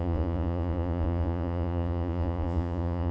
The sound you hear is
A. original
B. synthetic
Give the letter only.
B